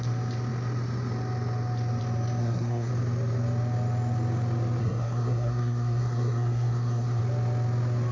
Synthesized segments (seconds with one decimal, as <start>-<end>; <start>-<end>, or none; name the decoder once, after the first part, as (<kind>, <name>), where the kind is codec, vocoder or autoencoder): 2.4-2.9 (codec, SNAC); 4.8-7.2